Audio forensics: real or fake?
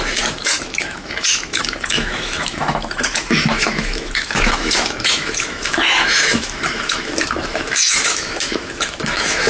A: fake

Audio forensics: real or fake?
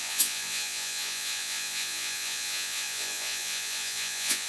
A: fake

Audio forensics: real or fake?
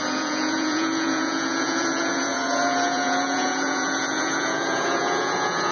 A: fake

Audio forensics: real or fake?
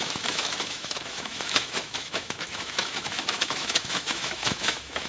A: fake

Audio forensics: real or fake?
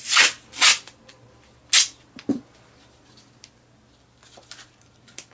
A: real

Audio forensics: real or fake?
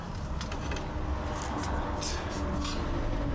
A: real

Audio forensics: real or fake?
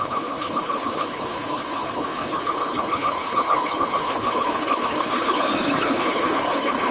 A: fake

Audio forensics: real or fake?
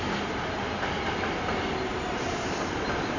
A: real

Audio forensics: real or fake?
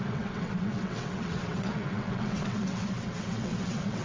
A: fake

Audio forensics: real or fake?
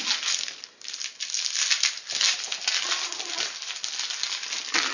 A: real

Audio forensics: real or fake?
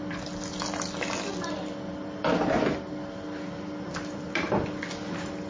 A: real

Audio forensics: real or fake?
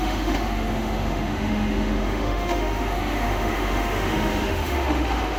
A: fake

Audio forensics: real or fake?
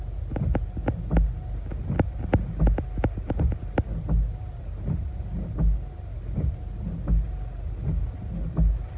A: real